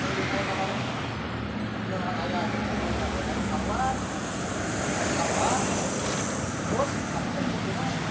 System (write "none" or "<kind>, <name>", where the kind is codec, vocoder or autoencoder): none